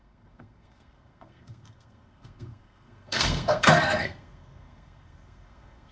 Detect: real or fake fake